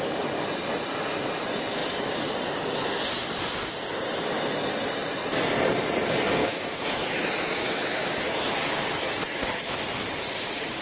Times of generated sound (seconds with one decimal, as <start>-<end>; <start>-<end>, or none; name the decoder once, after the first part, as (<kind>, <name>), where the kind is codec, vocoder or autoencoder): 6.4-8.1 (autoencoder, DAC-VAE)